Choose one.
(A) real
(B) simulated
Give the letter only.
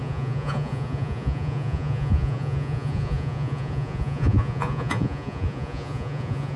B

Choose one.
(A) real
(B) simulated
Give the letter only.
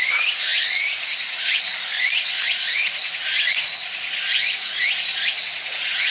B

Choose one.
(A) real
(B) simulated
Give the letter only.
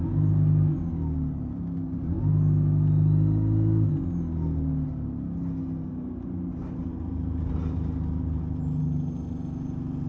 A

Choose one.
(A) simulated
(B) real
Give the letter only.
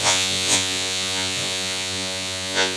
A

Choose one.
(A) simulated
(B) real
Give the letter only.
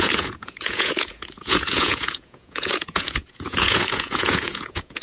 A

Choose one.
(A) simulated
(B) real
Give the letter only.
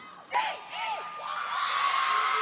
B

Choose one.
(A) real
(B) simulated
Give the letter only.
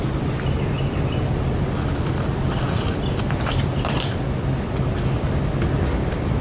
A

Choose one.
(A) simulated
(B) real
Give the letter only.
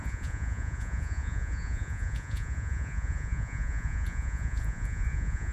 A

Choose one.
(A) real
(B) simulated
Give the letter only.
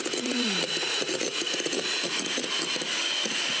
B